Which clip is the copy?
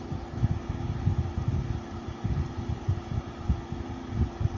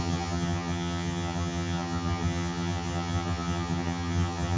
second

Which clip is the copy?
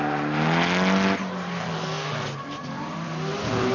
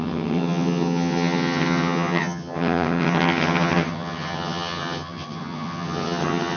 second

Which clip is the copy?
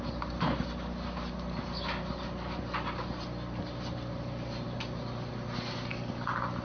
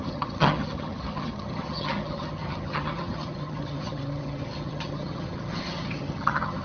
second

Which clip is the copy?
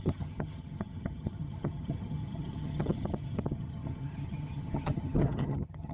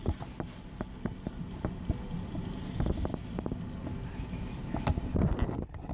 first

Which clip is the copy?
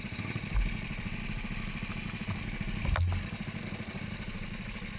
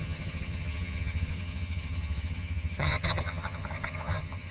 second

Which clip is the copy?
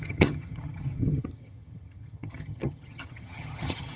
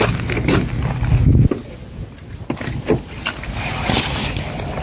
first